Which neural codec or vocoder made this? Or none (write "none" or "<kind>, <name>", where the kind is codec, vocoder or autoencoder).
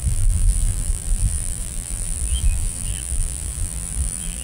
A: vocoder, BigVGAN v2